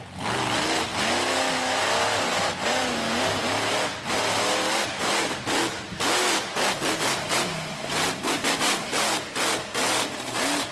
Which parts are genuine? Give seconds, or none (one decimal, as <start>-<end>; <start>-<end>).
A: 0.0-10.7